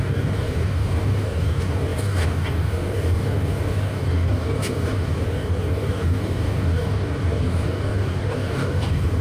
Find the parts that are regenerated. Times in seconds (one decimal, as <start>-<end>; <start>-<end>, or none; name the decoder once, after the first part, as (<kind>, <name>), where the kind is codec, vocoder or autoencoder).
0.0-9.2 (codec, DAC)